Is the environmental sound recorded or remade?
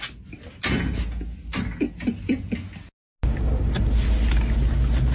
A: recorded